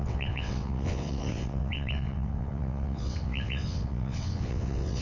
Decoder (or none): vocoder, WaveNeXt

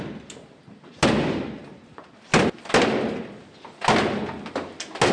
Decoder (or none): none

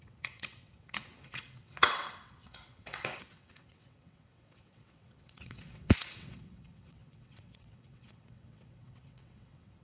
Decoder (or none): vocoder, WaveNeXt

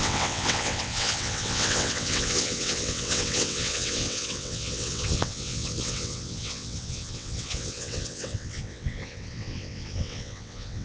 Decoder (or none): vocoder, WaveNeXt